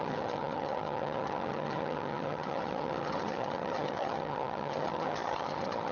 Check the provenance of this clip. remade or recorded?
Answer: remade